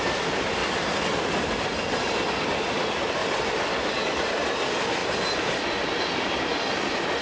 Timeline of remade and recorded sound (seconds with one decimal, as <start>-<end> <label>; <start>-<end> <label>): 0.0-0.6 remade; 0.6-2.7 recorded; 2.7-7.2 remade